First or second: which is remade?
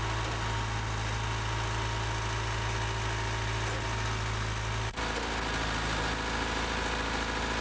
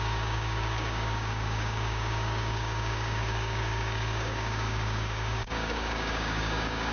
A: second